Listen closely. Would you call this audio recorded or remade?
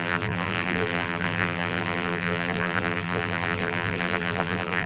remade